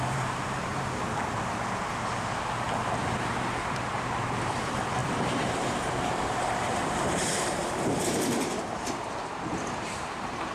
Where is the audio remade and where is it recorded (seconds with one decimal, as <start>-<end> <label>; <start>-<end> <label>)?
0.0-0.7 remade; 0.7-3.9 recorded; 3.9-10.5 remade